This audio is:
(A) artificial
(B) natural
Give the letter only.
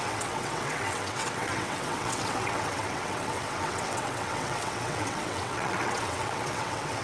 A